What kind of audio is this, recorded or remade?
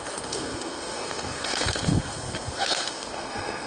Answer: remade